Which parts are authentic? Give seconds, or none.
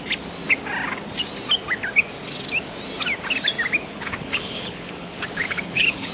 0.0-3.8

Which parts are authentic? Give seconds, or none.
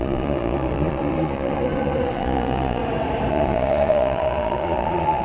2.8-3.3